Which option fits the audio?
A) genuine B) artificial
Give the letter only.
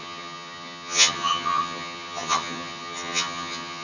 B